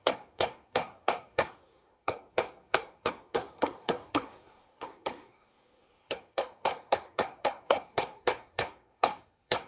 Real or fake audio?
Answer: fake